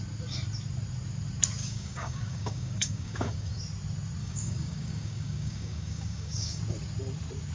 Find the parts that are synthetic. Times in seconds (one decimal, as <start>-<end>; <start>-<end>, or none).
1.6-3.6; 4.2-6.6